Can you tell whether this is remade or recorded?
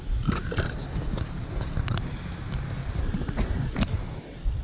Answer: recorded